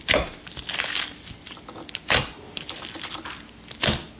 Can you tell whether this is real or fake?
real